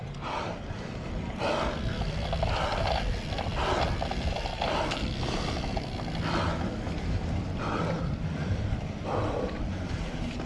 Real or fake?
real